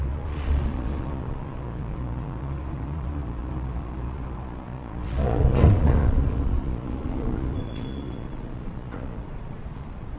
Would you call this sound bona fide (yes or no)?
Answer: no